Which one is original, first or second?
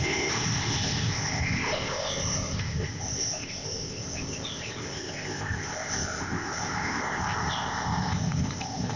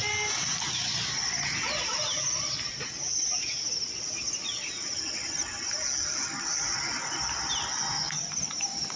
second